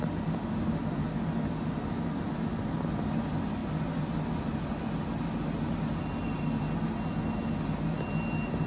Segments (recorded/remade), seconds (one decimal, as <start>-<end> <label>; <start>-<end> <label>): 0.0-8.7 recorded

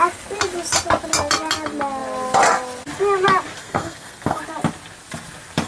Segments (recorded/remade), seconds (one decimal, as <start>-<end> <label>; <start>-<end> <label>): 0.0-3.6 recorded; 3.6-4.4 remade; 4.4-5.7 recorded